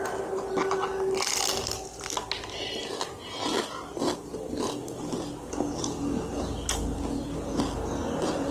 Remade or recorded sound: recorded